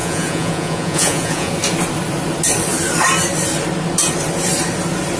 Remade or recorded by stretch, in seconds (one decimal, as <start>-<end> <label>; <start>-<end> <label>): 0.0-1.5 remade; 1.5-5.2 recorded